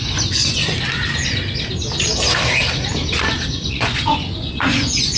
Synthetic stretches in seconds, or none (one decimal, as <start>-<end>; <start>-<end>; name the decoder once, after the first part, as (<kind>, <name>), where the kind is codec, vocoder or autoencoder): 0.0-0.6 (vocoder, Vocos); 3.7-5.2